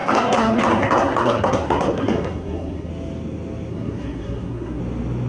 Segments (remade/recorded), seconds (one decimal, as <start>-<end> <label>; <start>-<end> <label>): 0.0-2.9 remade; 2.9-3.7 recorded; 3.7-4.8 remade; 4.8-5.3 recorded